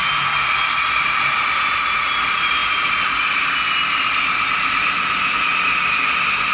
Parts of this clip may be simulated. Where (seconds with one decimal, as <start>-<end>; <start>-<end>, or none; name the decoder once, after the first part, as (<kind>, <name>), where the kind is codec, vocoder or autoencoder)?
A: none

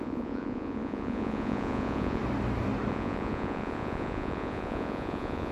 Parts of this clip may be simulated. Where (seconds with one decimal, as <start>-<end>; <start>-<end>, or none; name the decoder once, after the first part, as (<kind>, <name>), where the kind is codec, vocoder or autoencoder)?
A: 0.0-2.2 (vocoder, Vocos); 2.9-5.5

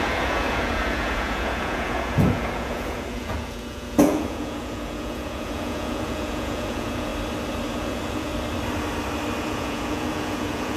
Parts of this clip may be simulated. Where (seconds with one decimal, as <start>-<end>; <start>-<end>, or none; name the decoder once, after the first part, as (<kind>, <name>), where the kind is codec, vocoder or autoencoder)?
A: 0.0-7.1 (vocoder, Vocos); 7.7-8.3; 9.4-10.8

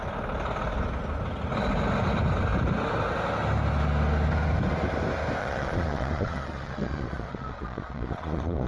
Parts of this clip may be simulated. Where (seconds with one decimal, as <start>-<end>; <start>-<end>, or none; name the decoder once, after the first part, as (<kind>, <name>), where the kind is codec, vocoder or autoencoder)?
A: 5.4-8.7 (vocoder, Vocos)

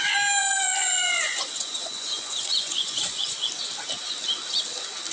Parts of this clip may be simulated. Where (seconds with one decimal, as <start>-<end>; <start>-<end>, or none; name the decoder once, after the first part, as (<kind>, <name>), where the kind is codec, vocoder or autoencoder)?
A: 0.4-3.5 (vocoder, Vocos)

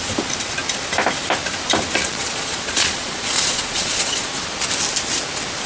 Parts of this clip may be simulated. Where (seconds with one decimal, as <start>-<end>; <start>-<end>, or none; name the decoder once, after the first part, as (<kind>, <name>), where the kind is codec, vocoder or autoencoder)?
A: 2.0-4.3 (vocoder, Vocos)

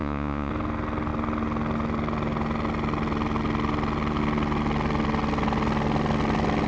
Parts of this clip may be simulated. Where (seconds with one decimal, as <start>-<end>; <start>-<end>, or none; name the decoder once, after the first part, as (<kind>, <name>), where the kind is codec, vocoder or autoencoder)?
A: 0.0-0.5 (vocoder, Vocos)

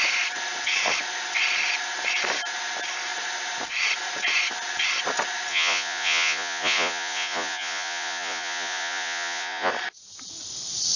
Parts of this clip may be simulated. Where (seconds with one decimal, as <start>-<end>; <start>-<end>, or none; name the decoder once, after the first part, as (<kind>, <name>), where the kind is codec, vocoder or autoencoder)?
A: 5.5-9.7 (vocoder, Vocos)